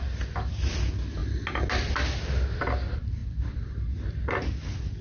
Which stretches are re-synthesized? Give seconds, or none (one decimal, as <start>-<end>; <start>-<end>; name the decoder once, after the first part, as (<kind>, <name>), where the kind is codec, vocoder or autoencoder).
none